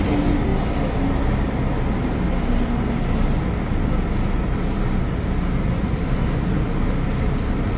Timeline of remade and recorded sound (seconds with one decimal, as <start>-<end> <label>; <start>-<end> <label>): 0.0-7.8 recorded

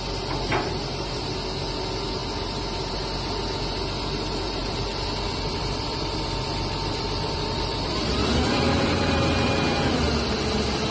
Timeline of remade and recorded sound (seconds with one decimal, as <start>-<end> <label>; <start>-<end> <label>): 0.0-0.5 recorded; 0.5-1.2 remade; 1.2-4.6 recorded; 4.6-9.0 remade; 9.0-10.9 recorded

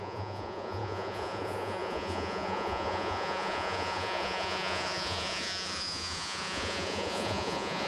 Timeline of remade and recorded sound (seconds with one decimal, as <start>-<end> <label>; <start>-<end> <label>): 0.0-7.9 remade

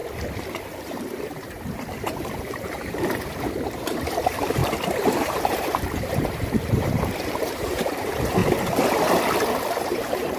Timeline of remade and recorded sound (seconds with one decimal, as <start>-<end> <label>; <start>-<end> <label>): 0.0-0.6 recorded; 0.6-8.4 remade; 8.4-9.5 recorded; 9.5-10.4 remade

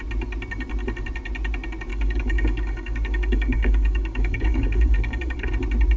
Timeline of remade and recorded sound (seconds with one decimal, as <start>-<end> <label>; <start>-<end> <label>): 0.0-1.9 recorded; 1.9-5.5 remade; 5.5-6.0 recorded

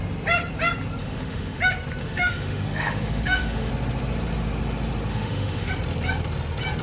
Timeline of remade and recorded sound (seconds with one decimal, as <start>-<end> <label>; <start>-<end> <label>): 0.0-1.0 recorded; 1.0-1.6 remade; 1.6-2.0 recorded; 2.0-3.7 remade; 3.7-5.1 recorded; 5.1-5.7 remade; 5.7-6.8 recorded